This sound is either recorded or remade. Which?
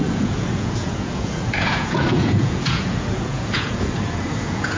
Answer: remade